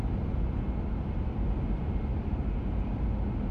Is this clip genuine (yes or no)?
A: yes